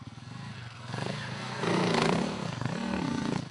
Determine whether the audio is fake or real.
fake